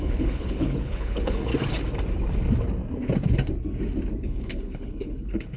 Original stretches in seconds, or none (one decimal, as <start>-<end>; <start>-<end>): 1.5-4.2